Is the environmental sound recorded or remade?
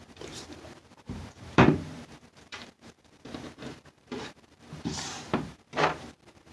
remade